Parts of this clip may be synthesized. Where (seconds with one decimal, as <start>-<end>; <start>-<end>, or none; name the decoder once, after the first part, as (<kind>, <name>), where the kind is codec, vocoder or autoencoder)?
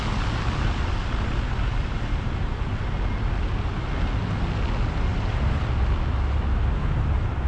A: 5.1-5.7 (vocoder, BigVGAN v2)